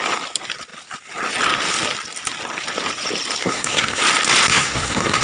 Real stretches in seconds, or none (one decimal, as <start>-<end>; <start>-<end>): 0.0-3.4; 4.0-4.5